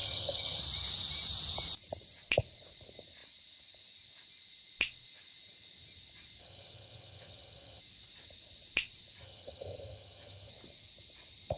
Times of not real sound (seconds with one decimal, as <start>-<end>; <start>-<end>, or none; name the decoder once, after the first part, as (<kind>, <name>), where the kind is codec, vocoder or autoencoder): 0.0-0.6 (vocoder, HiFi-GAN); 6.4-7.8; 9.2-10.5